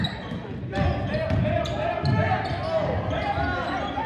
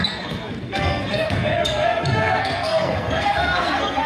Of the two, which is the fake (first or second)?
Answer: second